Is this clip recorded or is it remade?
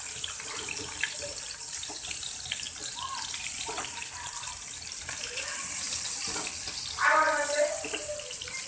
remade